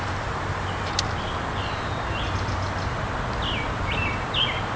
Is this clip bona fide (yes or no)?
yes